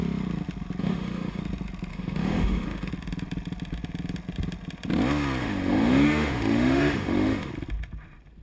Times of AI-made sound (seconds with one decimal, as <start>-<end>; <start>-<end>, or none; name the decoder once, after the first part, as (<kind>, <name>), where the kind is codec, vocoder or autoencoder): 0.8-1.4 (autoencoder, DAC-VAE); 1.9-2.9; 5.4-7.5